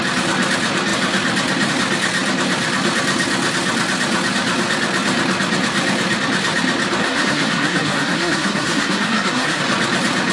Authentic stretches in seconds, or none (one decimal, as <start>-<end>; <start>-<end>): 0.0-7.0; 9.6-10.3